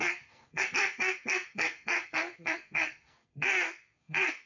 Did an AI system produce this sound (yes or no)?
yes